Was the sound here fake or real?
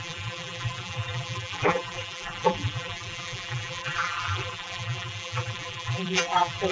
fake